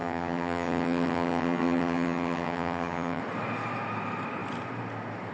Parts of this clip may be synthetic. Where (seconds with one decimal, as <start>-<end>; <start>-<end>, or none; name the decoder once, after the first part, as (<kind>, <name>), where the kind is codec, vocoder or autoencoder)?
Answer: 0.0-3.2 (vocoder, HiFi-GAN)

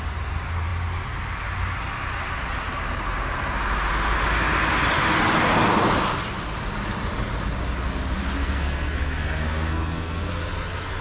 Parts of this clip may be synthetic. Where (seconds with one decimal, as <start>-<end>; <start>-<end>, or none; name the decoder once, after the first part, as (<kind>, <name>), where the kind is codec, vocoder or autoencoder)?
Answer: 8.4-10.3 (codec, SNAC)

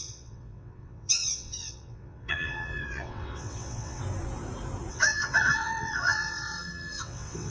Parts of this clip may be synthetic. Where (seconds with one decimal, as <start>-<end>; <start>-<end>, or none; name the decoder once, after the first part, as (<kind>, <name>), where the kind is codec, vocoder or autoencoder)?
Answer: 0.0-4.0 (vocoder, WaveNeXt); 4.9-7.5

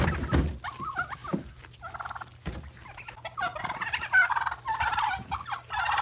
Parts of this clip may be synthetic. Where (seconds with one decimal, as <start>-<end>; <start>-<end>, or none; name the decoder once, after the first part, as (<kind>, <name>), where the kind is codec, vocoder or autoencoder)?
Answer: none

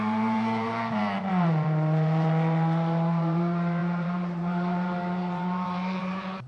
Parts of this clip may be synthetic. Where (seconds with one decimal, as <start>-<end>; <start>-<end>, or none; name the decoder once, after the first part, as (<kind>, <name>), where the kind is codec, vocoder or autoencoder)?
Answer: 0.0-6.5 (vocoder, BigVGAN v2)